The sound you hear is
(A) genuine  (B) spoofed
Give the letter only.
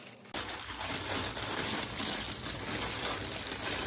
A